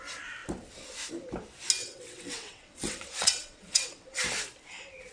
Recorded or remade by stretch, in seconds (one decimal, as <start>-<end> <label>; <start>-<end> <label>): 0.0-1.8 recorded; 1.8-4.2 remade; 4.2-5.1 recorded